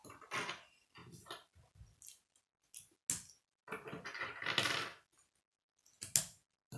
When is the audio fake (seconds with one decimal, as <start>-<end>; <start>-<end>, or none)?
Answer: none